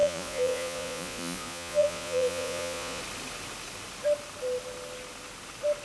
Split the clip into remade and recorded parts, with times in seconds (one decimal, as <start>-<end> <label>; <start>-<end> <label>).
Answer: 0.0-3.0 remade; 3.0-5.8 recorded